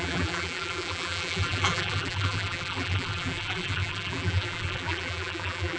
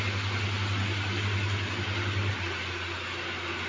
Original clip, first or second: second